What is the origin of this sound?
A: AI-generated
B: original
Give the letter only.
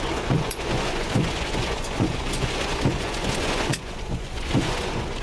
A